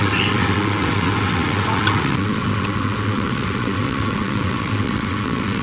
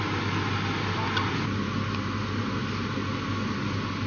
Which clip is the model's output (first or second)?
first